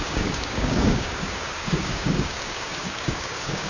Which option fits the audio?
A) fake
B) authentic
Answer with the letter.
A